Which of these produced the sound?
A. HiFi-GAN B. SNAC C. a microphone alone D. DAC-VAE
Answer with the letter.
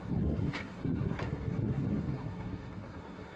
B